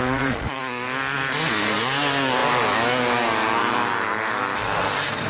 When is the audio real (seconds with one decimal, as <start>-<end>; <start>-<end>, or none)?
0.6-5.3